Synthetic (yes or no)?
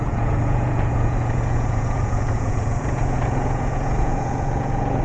yes